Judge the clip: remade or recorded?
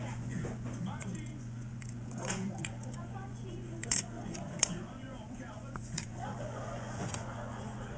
remade